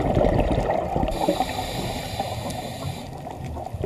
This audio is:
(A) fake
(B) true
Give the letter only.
B